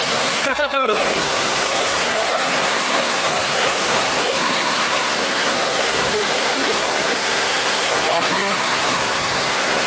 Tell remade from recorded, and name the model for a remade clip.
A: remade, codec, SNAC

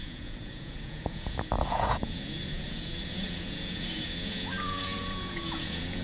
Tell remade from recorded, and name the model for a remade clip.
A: remade, vocoder, Vocos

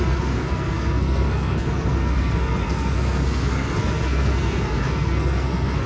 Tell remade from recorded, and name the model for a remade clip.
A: remade, codec, SNAC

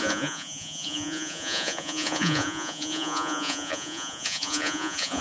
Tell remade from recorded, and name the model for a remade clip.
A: remade, vocoder, Vocos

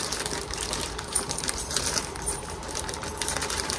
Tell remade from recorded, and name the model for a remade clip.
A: remade, vocoder, BigVGAN v2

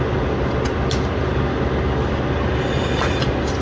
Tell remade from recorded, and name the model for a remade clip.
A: recorded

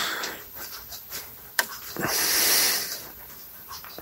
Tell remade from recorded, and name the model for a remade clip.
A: remade, vocoder, BigVGAN v2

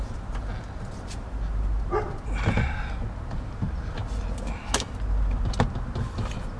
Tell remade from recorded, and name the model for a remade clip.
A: recorded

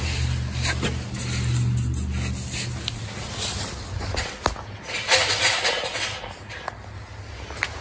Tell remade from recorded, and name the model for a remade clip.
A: recorded